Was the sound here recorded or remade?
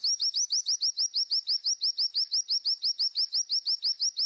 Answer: recorded